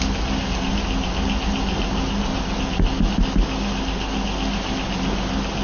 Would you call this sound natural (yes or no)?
yes